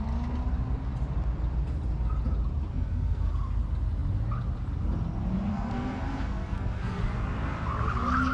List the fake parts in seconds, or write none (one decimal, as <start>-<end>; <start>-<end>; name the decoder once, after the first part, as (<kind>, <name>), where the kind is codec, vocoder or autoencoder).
2.7-3.3 (codec, SNAC); 5.5-7.0